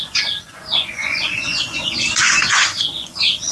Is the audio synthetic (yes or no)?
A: yes